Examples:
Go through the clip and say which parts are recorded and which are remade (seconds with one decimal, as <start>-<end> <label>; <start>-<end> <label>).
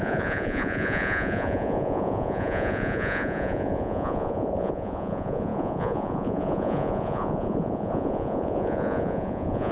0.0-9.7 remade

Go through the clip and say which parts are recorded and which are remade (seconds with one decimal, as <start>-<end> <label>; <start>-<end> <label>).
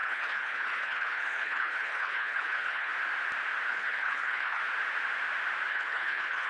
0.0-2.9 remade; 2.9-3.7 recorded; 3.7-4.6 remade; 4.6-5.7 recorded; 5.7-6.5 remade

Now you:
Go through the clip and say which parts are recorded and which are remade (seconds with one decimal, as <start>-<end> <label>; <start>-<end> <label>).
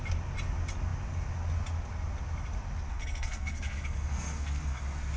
0.0-2.9 recorded; 2.9-4.8 remade; 4.8-5.2 recorded